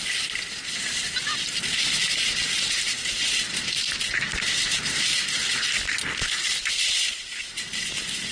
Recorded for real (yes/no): yes